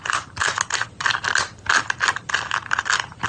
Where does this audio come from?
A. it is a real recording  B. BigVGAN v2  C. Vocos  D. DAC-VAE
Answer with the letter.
A